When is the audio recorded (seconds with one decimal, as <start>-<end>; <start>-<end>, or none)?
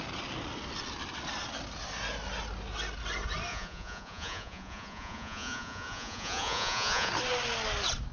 0.0-3.5; 7.1-8.1